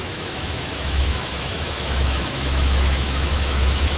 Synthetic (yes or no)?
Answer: yes